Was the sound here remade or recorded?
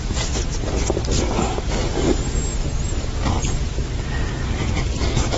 recorded